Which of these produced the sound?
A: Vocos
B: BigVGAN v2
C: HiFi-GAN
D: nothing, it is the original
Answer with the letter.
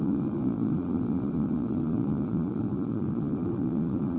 A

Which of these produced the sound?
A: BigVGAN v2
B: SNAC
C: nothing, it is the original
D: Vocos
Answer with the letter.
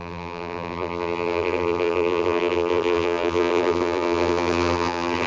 A